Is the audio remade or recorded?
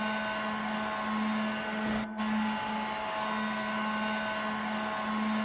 recorded